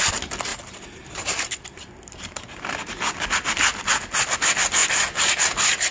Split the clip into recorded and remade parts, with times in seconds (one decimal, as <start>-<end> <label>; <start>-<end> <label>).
0.0-0.5 recorded; 0.5-2.9 remade; 2.9-5.9 recorded